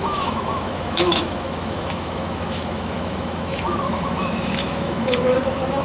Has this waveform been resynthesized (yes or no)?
yes